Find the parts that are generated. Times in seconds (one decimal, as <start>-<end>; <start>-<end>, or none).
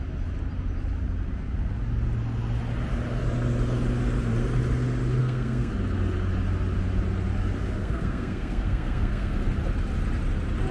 5.2-5.7; 7.8-9.3